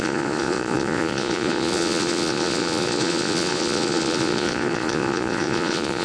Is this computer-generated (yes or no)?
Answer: yes